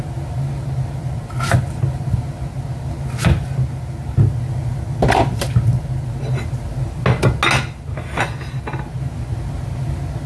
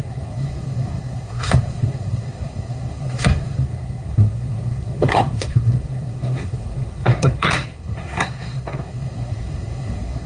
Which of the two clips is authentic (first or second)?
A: first